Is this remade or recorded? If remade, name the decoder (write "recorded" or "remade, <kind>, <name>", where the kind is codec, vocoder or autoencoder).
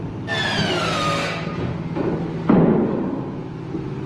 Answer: recorded